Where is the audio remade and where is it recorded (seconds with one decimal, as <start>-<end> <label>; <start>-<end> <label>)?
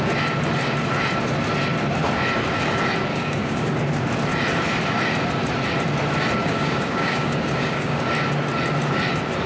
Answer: 0.0-3.1 recorded; 3.1-3.8 remade; 3.8-6.4 recorded; 6.4-8.1 remade; 8.1-9.5 recorded